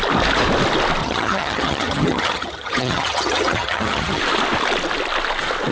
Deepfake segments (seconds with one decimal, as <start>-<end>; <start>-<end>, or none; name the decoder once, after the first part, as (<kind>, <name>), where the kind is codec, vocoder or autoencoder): 1.0-4.2 (vocoder, HiFi-GAN)